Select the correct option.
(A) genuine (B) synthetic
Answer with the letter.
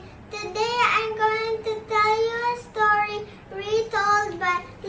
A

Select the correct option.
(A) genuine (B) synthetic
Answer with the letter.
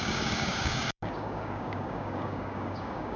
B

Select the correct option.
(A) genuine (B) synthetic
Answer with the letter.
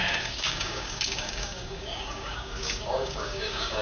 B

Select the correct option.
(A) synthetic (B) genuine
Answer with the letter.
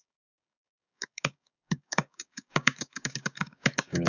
A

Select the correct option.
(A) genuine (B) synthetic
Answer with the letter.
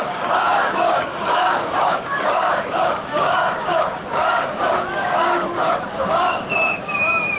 B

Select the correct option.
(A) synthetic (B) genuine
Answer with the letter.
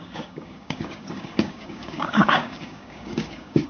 A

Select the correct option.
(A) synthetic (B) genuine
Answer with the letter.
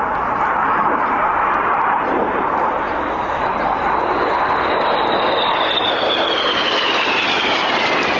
B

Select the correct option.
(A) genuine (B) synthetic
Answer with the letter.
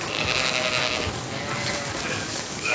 B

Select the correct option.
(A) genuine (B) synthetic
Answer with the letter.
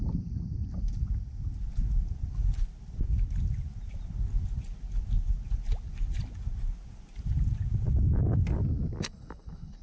A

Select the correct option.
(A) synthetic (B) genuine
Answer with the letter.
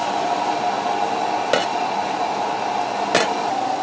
B